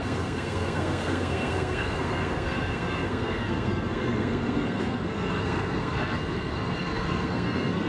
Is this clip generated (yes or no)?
yes